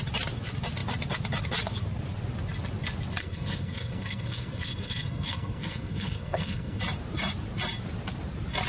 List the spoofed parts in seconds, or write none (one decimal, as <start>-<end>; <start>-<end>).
3.2-6.8